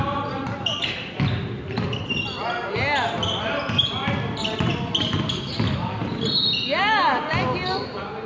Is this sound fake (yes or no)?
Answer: no